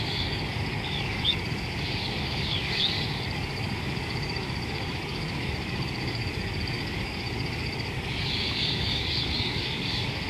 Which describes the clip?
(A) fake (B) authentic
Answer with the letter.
A